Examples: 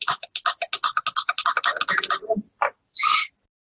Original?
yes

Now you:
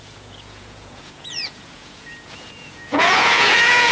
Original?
no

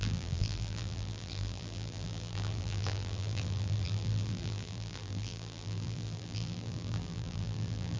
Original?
no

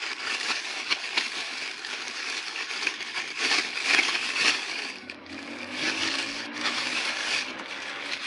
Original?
no